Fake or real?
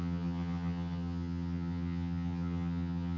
fake